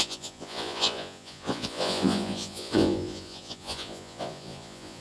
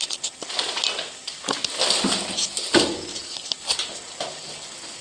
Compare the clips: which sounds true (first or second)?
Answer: second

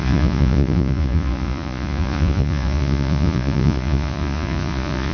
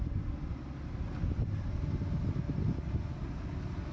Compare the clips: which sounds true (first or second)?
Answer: second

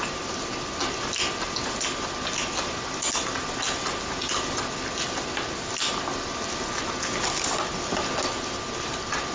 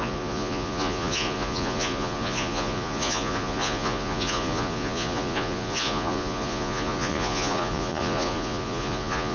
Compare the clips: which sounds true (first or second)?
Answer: first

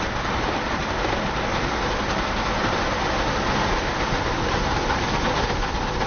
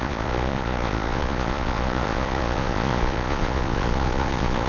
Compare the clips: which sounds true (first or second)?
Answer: first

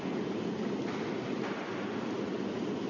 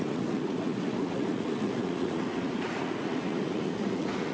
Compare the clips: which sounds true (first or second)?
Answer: first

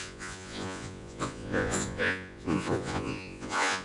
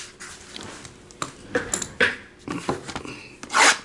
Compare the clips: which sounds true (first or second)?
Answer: second